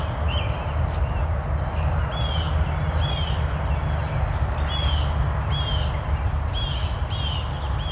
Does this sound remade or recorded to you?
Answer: recorded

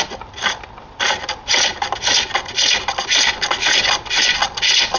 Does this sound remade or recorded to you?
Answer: recorded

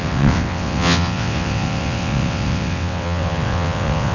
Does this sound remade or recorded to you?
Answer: remade